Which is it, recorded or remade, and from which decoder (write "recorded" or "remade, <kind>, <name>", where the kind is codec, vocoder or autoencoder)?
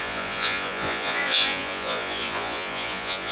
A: remade, vocoder, Vocos